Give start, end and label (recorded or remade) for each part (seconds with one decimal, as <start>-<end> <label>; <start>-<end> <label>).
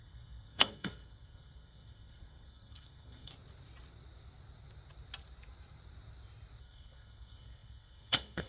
0.0-3.3 remade; 3.3-6.6 recorded; 6.6-8.5 remade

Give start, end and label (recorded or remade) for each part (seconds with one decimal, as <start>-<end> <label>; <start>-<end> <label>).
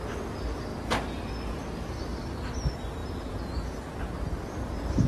0.0-3.0 recorded; 3.0-4.0 remade; 4.0-5.1 recorded